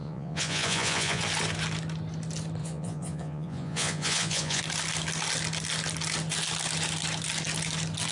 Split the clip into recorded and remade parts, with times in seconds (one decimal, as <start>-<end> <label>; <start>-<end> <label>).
0.0-1.2 remade; 1.2-2.6 recorded; 2.6-4.6 remade; 4.6-8.1 recorded